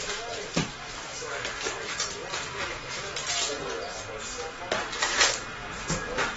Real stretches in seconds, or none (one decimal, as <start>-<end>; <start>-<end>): 2.2-5.6